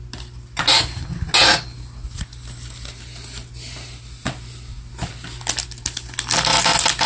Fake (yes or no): no